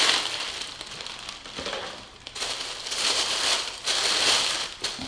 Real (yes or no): yes